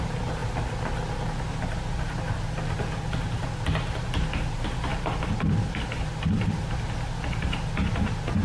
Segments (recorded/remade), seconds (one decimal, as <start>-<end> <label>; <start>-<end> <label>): 0.0-8.4 recorded